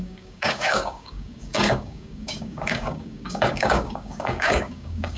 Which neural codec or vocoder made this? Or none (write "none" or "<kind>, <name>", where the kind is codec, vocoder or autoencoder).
codec, DAC